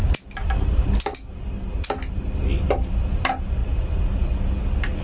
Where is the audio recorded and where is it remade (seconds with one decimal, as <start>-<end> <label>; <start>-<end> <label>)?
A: 0.0-5.0 recorded